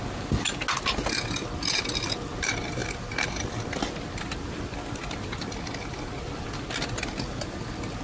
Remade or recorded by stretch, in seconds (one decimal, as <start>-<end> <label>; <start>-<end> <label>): 0.0-8.0 recorded